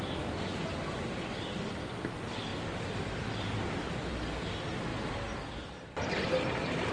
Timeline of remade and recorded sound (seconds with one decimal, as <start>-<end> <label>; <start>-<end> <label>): 0.0-2.5 recorded; 2.5-4.1 remade; 4.1-4.9 recorded; 4.9-6.1 remade; 6.1-6.9 recorded